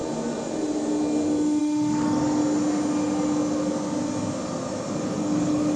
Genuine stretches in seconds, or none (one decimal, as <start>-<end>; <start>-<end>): 0.0-1.6; 2.4-5.0

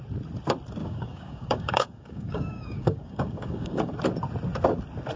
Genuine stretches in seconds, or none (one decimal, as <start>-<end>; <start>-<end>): 0.0-0.8; 3.9-5.2